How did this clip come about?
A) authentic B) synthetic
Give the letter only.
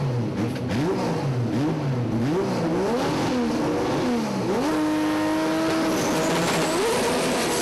A